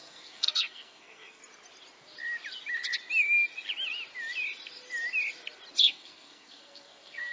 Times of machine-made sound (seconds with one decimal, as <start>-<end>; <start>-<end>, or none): 0.0-1.4; 5.8-7.3